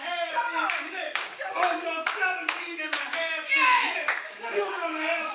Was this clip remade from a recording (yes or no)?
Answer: yes